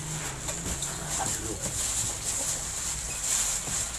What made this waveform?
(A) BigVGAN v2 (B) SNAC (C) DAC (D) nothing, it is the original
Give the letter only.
D